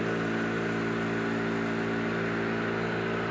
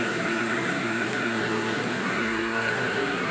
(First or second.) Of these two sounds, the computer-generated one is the second